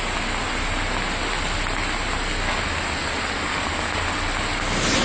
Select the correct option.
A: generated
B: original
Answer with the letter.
B